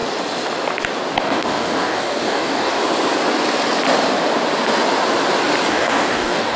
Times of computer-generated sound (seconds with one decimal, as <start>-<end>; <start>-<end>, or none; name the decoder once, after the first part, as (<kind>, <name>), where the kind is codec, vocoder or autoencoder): 1.2-2.8 (codec, DAC); 5.7-6.6